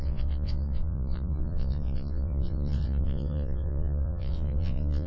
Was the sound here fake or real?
fake